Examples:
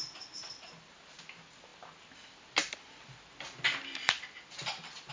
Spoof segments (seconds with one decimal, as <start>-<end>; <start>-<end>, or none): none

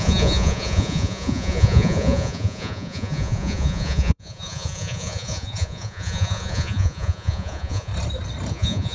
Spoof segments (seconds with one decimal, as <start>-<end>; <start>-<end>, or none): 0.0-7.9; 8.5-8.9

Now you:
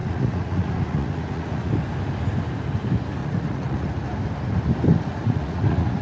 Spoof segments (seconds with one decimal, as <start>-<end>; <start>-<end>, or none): 0.0-1.7; 3.2-3.9; 5.1-6.0